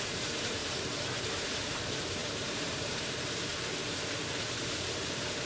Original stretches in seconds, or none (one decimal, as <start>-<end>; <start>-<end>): 3.5-4.5